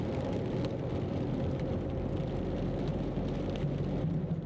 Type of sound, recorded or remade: recorded